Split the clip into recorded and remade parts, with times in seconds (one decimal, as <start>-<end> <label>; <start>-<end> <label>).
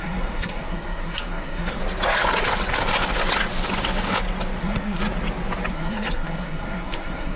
0.0-1.8 remade; 1.8-4.6 recorded; 4.6-5.0 remade; 5.0-5.7 recorded; 5.7-7.4 remade